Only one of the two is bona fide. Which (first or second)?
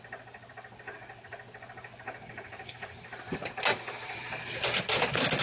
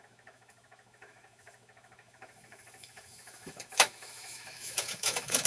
first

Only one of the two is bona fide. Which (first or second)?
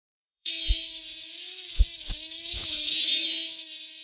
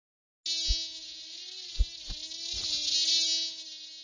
second